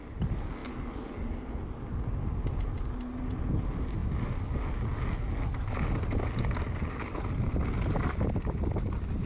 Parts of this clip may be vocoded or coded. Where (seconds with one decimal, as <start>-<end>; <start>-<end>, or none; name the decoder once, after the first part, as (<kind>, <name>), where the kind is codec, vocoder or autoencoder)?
none